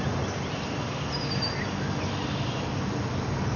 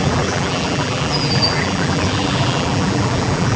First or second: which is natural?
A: first